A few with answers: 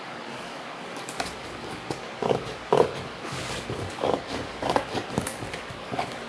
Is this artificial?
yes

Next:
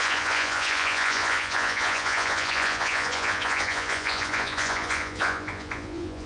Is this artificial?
yes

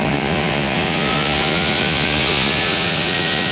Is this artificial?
yes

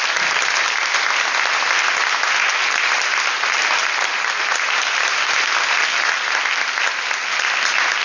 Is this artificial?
no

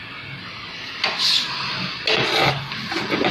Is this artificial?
no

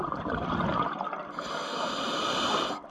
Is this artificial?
no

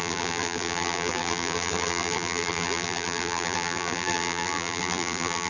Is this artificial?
yes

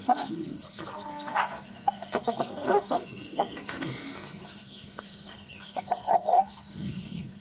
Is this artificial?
yes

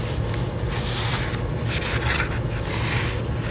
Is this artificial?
no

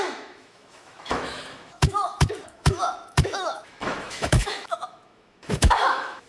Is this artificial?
yes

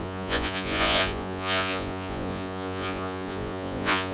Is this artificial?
yes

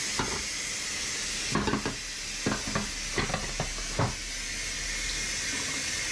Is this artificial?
no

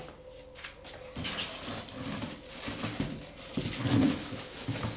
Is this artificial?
no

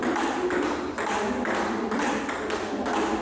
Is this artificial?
no